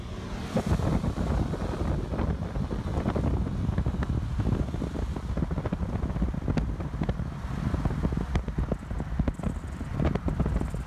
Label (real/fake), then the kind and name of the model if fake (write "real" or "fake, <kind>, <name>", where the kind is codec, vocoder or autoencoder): real